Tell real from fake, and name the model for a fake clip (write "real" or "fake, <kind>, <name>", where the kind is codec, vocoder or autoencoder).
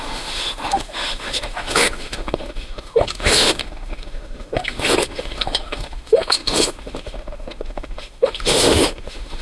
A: fake, autoencoder, DAC-VAE